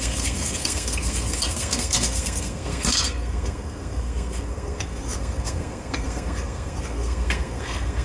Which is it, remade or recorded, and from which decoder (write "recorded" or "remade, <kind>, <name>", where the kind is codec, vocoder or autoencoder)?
remade, codec, SNAC